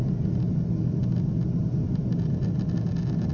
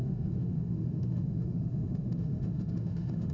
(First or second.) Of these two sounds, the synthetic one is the second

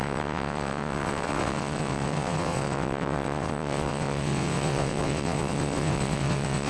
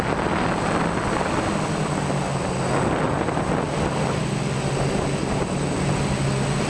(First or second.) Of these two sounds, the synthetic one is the first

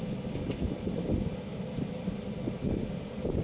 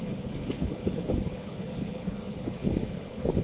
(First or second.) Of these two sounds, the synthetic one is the second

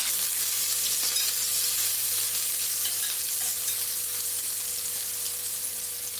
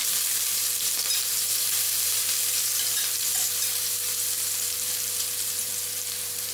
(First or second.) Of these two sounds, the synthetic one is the second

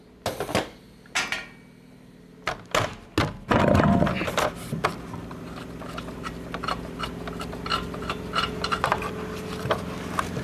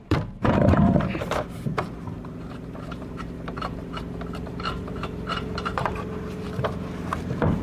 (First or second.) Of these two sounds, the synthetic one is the second